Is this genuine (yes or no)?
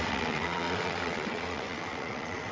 no